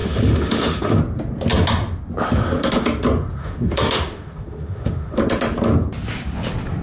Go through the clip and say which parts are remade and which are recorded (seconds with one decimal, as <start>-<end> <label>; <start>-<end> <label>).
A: 0.0-1.0 remade; 1.0-3.4 recorded; 3.4-5.2 remade; 5.2-6.8 recorded